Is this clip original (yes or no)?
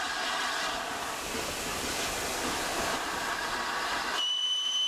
no